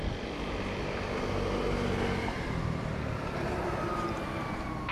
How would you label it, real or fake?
real